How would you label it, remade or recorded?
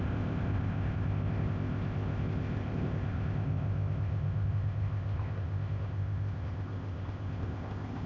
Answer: remade